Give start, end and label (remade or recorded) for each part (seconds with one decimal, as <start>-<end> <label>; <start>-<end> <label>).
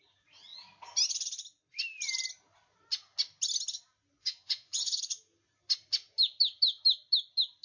0.0-4.2 recorded; 4.2-5.0 remade; 5.0-7.6 recorded